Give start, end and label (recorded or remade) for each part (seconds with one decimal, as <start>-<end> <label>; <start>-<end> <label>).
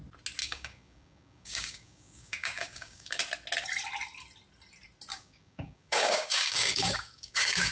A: 0.0-0.4 recorded; 0.4-3.2 remade; 3.2-5.1 recorded; 5.1-7.7 remade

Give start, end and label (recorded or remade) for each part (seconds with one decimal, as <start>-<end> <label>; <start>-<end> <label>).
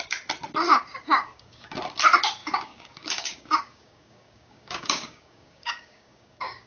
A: 0.0-0.7 recorded; 0.7-1.8 remade; 1.8-2.4 recorded; 2.4-6.7 remade